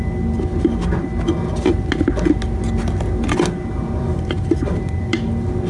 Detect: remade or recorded recorded